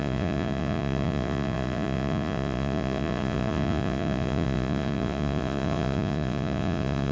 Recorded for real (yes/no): no